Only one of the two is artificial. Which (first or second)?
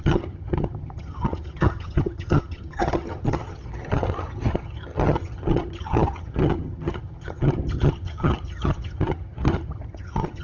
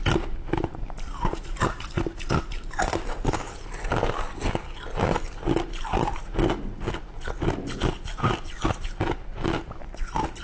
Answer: first